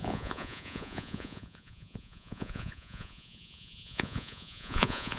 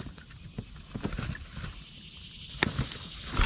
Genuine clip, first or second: second